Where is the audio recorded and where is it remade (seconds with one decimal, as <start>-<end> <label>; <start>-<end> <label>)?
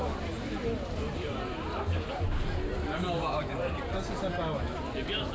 0.0-0.6 recorded; 0.6-3.8 remade; 3.8-5.3 recorded